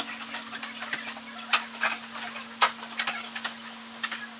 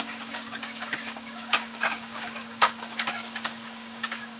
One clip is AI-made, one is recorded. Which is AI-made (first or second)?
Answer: second